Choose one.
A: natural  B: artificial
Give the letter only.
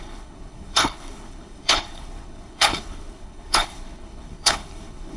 B